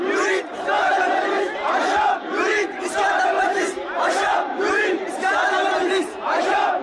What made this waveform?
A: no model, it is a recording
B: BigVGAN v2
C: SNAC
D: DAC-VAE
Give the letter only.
B